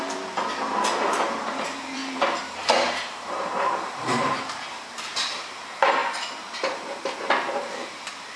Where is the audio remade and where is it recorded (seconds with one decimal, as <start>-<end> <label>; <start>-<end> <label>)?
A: 0.0-6.0 remade; 6.0-6.6 recorded; 6.6-8.4 remade